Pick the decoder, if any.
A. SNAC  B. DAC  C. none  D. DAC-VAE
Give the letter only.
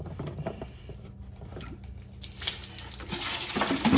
C